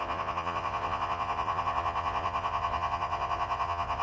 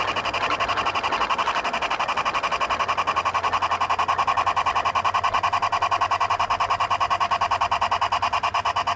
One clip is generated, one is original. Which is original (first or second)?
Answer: second